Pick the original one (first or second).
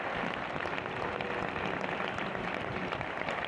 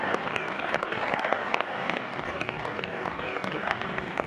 first